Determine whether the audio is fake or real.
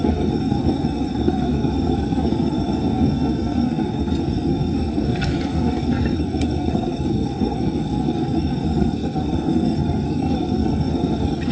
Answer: fake